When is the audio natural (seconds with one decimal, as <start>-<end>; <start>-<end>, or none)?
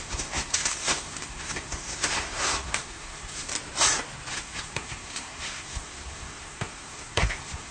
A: 3.5-4.3